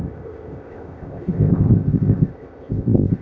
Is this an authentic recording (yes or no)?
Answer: no